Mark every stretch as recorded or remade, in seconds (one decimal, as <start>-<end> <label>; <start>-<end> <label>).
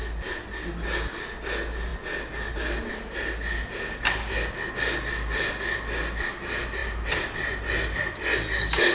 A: 0.0-8.9 recorded